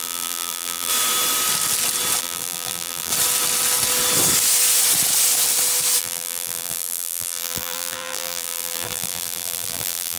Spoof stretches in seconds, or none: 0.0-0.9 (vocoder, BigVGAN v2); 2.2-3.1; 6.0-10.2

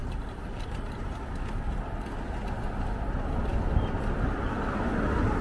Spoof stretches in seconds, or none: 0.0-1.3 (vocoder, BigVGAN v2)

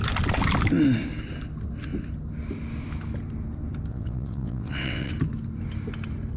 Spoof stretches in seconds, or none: 3.9-5.1 (vocoder, WaveNeXt)

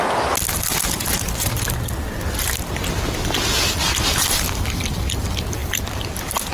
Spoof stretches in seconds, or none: none